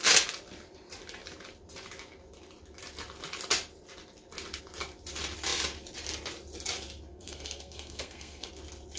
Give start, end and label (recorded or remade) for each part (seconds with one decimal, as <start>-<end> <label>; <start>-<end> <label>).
0.0-7.1 recorded; 7.1-8.5 remade; 8.5-9.0 recorded

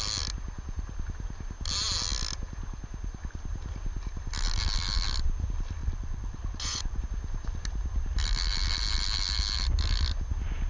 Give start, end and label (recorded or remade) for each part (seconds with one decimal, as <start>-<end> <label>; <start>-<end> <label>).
0.0-5.8 recorded; 5.8-7.0 remade; 7.0-10.7 recorded

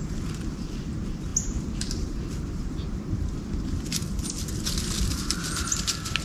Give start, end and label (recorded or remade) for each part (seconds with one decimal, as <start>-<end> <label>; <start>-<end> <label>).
0.0-6.2 recorded

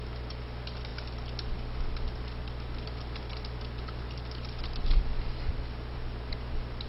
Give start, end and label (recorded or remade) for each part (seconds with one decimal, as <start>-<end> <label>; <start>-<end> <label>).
0.0-6.9 recorded

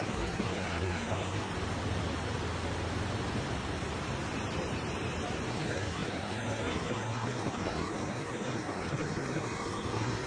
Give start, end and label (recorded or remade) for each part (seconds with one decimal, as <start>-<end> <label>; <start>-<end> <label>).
0.0-1.5 remade; 1.5-5.5 recorded; 5.5-10.3 remade

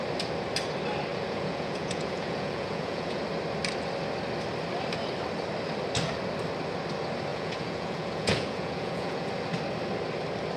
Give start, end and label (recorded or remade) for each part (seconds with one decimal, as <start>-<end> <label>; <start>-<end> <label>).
0.0-1.1 recorded; 1.1-3.2 remade; 3.2-7.3 recorded; 7.3-9.3 remade; 9.3-10.6 recorded